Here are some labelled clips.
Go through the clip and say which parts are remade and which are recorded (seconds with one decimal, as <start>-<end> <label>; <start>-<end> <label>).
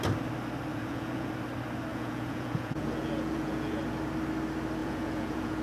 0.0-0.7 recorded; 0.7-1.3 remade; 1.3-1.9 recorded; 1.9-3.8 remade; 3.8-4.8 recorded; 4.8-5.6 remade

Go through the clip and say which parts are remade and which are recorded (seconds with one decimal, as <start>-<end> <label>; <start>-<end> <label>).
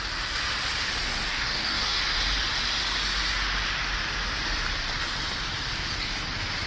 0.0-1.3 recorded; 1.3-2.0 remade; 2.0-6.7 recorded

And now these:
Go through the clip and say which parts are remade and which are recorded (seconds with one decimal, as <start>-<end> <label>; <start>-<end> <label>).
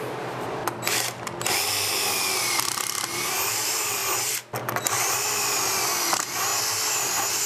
0.0-0.6 remade; 0.6-3.5 recorded; 3.5-4.0 remade; 4.0-6.1 recorded; 6.1-6.5 remade; 6.5-7.5 recorded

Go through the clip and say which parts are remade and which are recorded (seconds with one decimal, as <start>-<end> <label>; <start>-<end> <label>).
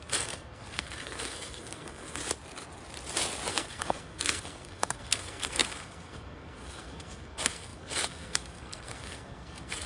0.0-2.2 remade; 2.2-3.5 recorded; 3.5-9.9 remade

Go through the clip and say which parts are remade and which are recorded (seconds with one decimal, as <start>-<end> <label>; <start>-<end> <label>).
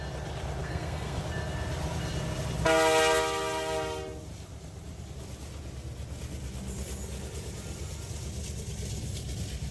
0.0-0.6 recorded; 0.6-1.2 remade; 1.2-9.7 recorded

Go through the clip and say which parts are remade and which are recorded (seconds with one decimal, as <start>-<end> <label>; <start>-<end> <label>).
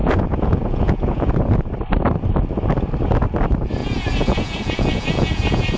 0.0-1.3 remade; 1.3-3.8 recorded; 3.8-5.8 remade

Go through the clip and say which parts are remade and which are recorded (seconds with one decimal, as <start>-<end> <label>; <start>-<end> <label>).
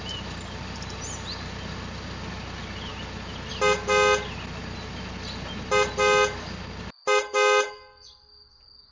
0.0-8.9 recorded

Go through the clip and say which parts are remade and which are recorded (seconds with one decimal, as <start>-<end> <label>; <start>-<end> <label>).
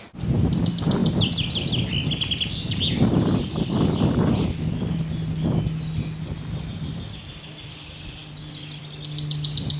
0.0-1.0 recorded; 1.0-1.9 remade; 1.9-4.4 recorded; 4.4-5.6 remade; 5.6-8.2 recorded; 8.2-8.8 remade; 8.8-9.8 recorded